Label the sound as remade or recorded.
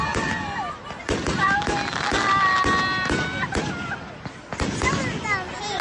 recorded